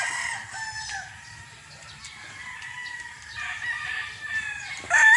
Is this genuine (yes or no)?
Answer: yes